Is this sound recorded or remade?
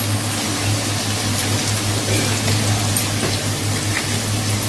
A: recorded